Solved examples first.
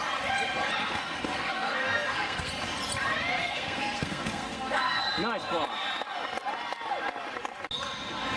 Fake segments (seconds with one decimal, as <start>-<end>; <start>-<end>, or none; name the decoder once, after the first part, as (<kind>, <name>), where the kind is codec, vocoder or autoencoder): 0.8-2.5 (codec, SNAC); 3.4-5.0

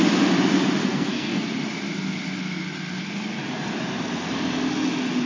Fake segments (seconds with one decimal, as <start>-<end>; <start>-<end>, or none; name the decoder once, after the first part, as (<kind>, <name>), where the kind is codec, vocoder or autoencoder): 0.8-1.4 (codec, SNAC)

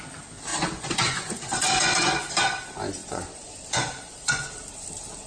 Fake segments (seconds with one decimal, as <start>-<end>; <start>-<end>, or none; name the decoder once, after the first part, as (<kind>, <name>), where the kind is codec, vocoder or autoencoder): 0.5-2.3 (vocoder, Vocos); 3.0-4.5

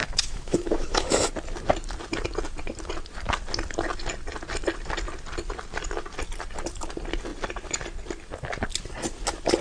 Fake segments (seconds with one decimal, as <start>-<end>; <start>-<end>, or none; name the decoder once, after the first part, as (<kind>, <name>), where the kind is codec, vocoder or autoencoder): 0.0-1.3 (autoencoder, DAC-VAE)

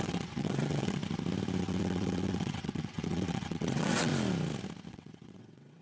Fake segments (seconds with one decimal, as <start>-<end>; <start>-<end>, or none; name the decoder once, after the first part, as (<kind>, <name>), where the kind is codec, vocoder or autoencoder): 0.0-1.0 (vocoder, WaveNeXt); 1.6-4.1; 4.9-5.8

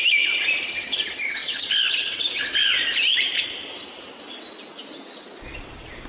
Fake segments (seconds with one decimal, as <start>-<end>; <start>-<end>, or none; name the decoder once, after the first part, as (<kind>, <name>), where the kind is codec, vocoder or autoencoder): none